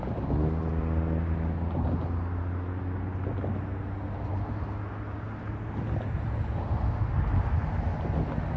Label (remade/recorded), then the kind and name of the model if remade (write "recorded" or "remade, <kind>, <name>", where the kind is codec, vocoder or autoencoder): recorded